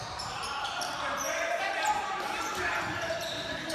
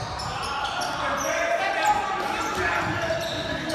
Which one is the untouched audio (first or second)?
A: second